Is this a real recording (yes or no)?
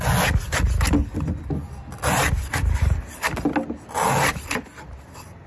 yes